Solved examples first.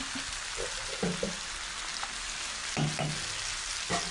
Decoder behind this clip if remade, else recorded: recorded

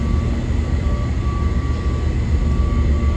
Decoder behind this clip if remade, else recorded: recorded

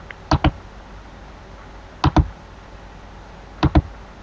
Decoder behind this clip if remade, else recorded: recorded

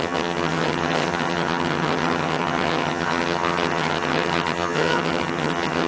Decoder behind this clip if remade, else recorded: remade, vocoder, HiFi-GAN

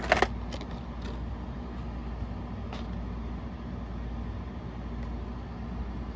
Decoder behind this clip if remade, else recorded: recorded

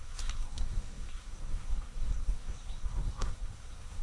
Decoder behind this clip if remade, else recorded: remade, codec, SNAC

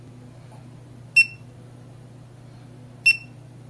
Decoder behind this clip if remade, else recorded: recorded